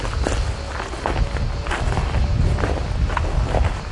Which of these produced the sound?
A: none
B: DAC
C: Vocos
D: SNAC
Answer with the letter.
A